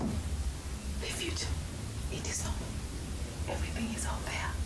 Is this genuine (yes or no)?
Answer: yes